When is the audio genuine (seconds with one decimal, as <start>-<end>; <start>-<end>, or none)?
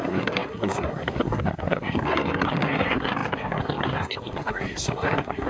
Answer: none